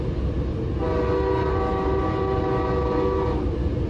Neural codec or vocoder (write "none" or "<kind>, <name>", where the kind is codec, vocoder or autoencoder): none